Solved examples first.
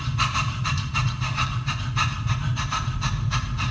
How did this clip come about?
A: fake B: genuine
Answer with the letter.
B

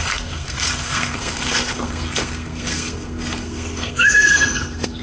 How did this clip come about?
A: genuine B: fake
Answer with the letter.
B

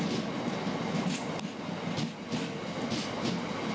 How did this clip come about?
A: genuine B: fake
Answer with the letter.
A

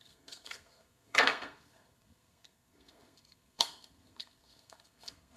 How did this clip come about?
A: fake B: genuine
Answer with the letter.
A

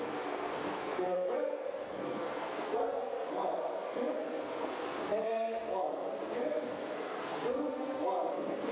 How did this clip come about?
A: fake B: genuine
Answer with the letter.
A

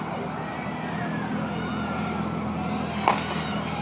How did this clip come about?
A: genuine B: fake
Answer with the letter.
A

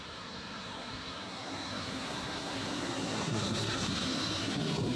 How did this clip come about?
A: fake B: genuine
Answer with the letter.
A